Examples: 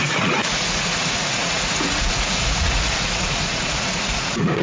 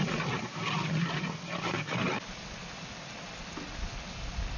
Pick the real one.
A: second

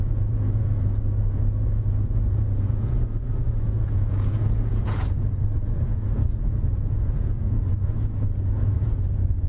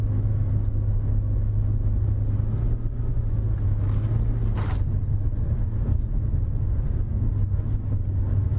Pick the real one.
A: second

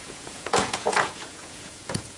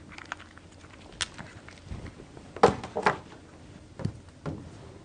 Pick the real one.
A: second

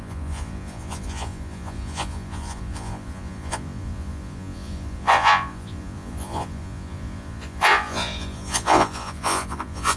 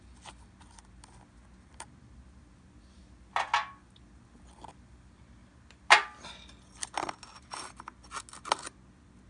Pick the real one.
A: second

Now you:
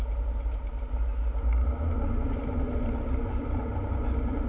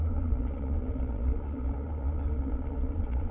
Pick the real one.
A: first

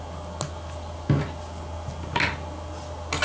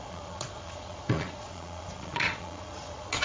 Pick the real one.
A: first